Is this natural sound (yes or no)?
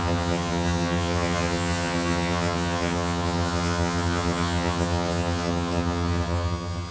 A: no